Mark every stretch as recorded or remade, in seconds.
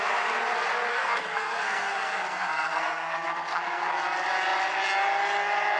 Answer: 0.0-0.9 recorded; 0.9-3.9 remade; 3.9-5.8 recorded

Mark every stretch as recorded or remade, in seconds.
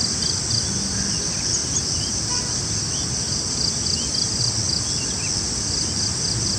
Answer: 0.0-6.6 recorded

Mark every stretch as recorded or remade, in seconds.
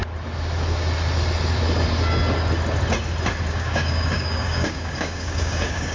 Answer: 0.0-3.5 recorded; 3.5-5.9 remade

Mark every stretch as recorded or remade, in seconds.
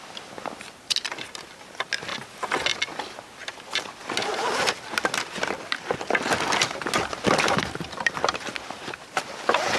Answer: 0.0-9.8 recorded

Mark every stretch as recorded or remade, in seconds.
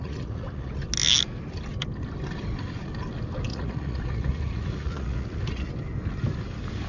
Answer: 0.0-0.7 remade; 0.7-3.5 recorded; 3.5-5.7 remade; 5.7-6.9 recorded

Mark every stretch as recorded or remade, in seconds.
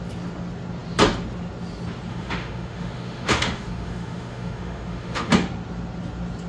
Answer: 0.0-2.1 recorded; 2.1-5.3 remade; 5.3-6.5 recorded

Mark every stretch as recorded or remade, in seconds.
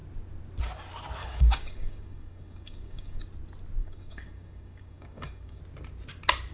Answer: 0.0-1.2 recorded; 1.2-3.2 remade; 3.2-3.8 recorded; 3.8-5.6 remade; 5.6-6.5 recorded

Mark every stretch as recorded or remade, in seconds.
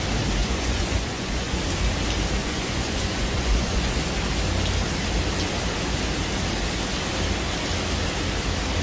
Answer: 0.0-0.4 recorded; 0.4-1.6 remade; 1.6-2.4 recorded; 2.4-3.9 remade; 3.9-8.8 recorded